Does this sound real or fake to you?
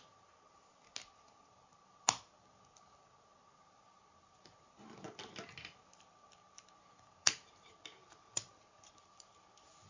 real